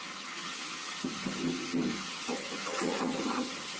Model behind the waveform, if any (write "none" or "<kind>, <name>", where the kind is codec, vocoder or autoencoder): vocoder, HiFi-GAN